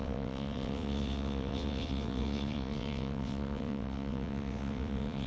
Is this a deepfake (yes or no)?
yes